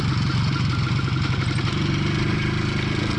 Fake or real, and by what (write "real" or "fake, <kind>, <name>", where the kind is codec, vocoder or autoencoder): real